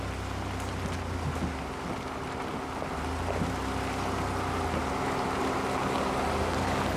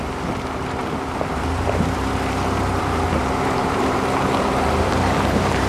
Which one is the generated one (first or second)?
second